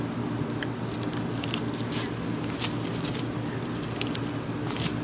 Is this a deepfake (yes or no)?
no